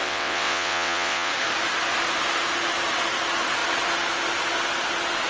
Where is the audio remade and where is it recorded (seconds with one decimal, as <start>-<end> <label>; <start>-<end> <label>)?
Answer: 0.0-1.3 remade; 1.3-5.3 recorded